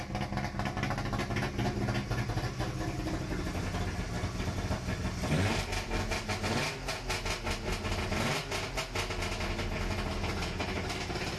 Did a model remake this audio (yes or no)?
no